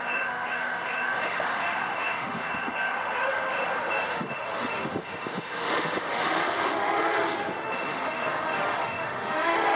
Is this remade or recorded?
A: remade